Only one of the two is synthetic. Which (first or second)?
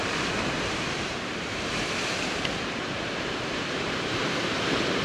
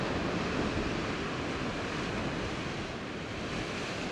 first